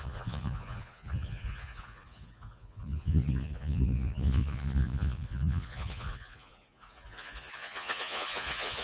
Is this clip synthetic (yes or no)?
yes